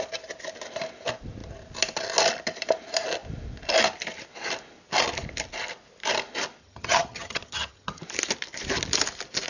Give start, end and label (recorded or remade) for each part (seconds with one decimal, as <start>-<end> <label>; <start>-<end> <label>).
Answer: 0.0-6.6 recorded; 6.6-8.0 remade; 8.0-9.5 recorded